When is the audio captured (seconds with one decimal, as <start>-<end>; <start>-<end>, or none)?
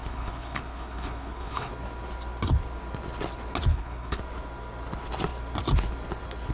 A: 1.7-3.7; 4.2-6.5